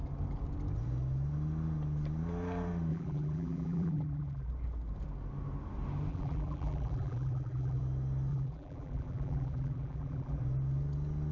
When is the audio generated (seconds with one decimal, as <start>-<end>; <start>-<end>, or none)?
2.9-4.5; 6.1-7.8; 8.3-10.4